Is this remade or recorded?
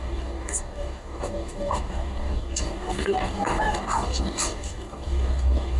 remade